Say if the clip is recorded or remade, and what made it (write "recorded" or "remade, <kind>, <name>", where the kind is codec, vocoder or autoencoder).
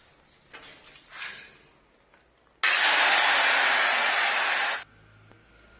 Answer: recorded